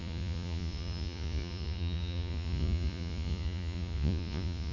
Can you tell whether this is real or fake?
fake